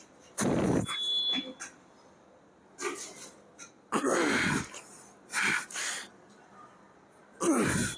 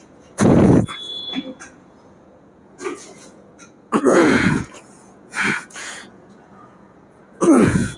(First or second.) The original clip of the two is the first